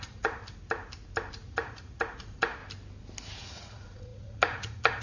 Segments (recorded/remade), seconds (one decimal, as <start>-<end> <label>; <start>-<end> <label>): 0.0-0.4 remade; 0.4-1.3 recorded; 1.3-2.6 remade; 2.6-3.4 recorded; 3.4-5.0 remade